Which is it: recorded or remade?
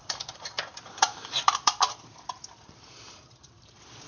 remade